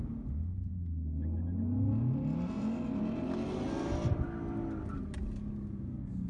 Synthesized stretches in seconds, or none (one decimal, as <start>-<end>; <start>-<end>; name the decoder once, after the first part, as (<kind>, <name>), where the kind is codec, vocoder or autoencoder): none